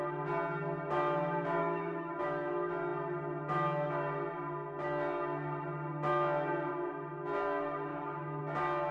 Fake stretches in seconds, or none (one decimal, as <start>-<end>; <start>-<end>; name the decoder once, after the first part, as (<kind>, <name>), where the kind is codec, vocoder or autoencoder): 1.6-2.1 (autoencoder, DAC-VAE); 7.9-8.4